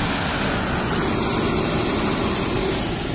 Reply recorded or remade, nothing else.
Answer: recorded